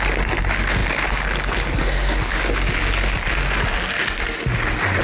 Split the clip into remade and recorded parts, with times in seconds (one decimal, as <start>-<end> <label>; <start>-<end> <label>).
0.0-5.0 recorded